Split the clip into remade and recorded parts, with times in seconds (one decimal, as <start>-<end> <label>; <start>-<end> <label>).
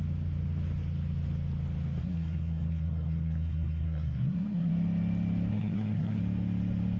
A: 0.0-2.0 recorded; 2.0-4.7 remade; 4.7-5.5 recorded; 5.5-6.2 remade; 6.2-7.0 recorded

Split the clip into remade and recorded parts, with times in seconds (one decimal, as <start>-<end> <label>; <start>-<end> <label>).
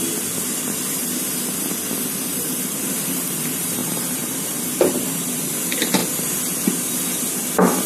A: 0.0-3.8 recorded; 3.8-4.6 remade; 4.6-7.9 recorded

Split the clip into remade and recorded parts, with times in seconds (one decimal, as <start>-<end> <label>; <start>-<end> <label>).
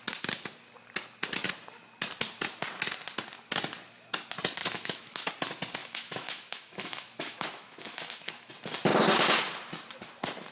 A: 0.0-4.6 recorded; 4.6-5.3 remade; 5.3-5.8 recorded; 5.8-8.5 remade; 8.5-10.5 recorded